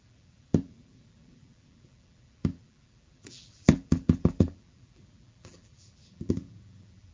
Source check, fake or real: fake